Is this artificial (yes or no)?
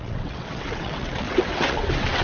yes